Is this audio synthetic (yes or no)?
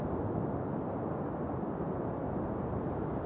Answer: no